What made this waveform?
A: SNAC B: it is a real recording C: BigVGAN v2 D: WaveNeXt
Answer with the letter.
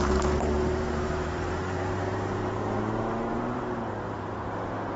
C